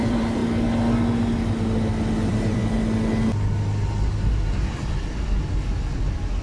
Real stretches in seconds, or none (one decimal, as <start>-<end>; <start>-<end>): 0.4-1.9; 2.6-6.4